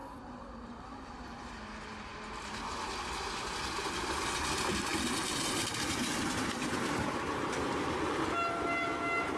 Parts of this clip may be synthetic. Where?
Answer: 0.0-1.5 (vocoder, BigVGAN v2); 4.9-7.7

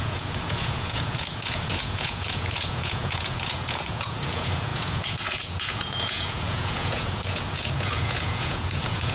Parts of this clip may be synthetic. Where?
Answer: 0.0-9.1 (vocoder, Vocos)

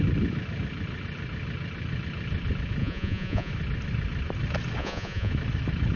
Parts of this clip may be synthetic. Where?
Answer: 2.8-3.5 (vocoder, Vocos); 4.8-5.3

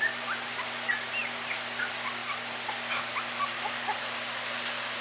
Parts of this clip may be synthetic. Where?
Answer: none

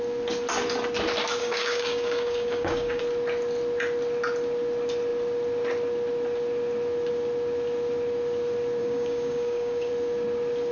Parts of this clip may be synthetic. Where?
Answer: 1.4-3.0 (codec, DAC); 8.8-9.9

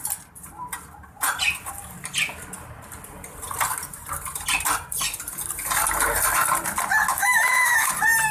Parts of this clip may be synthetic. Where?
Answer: 7.1-7.9 (autoencoder, DAC-VAE)

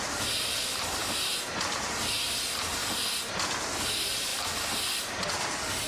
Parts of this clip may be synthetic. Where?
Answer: 4.3-5.9 (vocoder, BigVGAN v2)

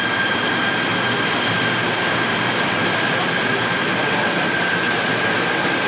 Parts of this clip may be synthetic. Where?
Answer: none